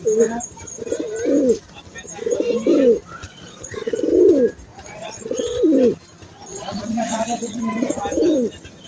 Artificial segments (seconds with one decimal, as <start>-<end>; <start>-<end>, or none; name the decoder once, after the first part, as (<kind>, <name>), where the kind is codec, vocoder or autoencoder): 3.2-4.0 (vocoder, Vocos); 4.7-5.6; 6.5-8.0